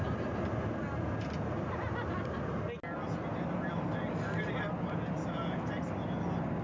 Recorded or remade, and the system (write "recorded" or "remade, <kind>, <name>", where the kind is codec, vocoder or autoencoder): recorded